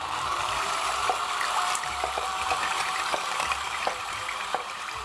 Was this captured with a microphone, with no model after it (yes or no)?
no